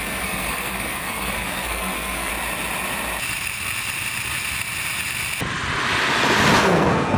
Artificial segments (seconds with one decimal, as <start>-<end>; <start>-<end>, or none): 0.0-2.3; 6.6-7.2